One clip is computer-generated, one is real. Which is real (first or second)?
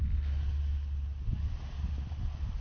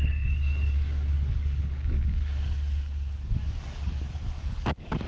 first